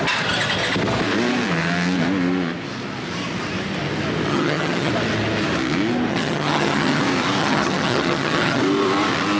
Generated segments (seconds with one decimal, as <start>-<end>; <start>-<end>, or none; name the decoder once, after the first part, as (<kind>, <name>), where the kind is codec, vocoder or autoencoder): 4.3-4.9 (vocoder, HiFi-GAN); 6.1-7.0; 7.4-8.6